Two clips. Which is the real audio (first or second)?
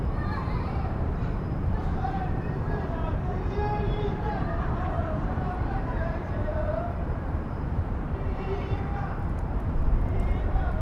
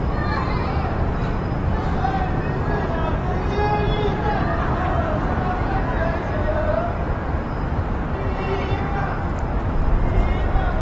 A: second